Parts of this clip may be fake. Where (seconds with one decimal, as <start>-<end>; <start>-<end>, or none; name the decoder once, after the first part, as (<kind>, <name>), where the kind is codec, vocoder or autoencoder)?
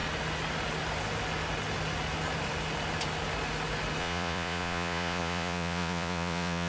4.0-6.7 (vocoder, Vocos)